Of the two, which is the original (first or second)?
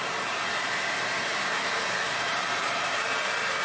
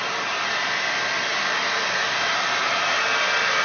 second